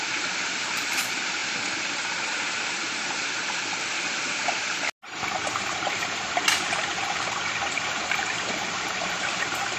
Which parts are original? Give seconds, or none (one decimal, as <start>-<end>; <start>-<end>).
1.4-5.5